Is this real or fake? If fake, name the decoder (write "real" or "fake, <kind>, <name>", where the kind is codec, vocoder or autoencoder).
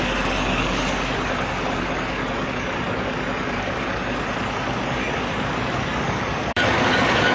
fake, codec, DAC